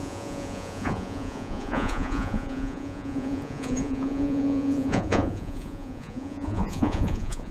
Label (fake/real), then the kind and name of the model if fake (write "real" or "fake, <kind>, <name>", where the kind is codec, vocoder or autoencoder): fake, vocoder, Vocos